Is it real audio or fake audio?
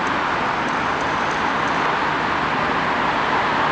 real